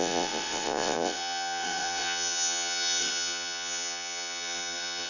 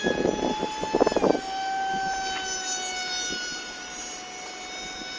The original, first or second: second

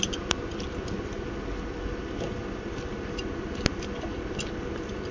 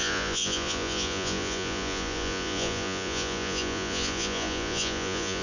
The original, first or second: first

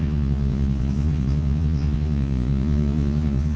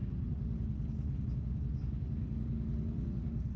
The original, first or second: second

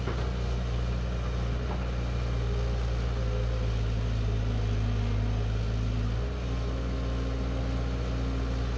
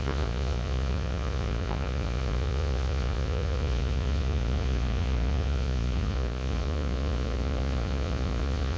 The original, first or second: first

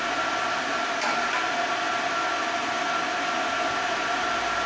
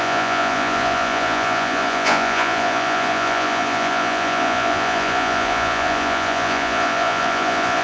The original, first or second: first